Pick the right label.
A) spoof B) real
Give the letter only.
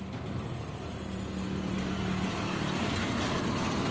B